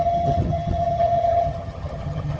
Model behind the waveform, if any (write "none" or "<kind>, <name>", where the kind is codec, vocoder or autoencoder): vocoder, HiFi-GAN